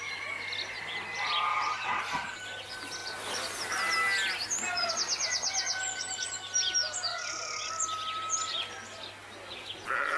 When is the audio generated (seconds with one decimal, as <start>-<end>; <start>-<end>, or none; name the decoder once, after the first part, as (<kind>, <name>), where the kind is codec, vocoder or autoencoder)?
1.5-2.0 (vocoder, WaveNeXt); 7.1-7.7